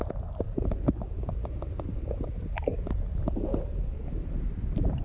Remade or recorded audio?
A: recorded